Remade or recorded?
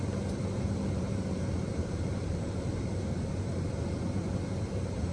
remade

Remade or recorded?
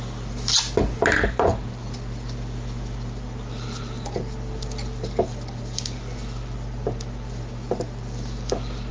recorded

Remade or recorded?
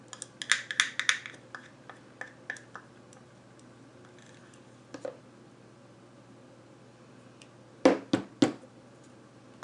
recorded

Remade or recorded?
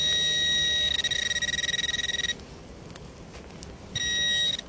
recorded